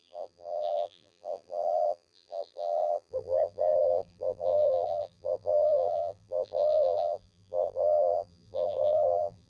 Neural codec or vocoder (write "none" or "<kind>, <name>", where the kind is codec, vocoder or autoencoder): vocoder, BigVGAN v2